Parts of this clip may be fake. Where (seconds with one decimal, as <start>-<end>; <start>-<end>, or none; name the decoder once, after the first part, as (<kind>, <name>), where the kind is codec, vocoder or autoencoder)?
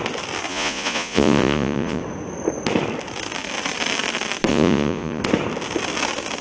0.5-2.0 (vocoder, Vocos); 4.5-5.2